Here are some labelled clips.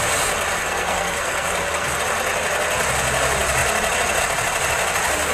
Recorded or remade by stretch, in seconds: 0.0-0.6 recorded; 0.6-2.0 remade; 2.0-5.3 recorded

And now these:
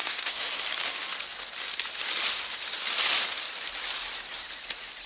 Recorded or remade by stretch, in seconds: 0.0-0.6 remade; 0.6-5.1 recorded